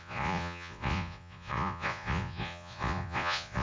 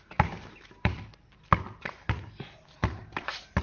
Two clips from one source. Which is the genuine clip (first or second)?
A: second